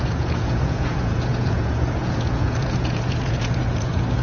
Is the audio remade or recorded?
remade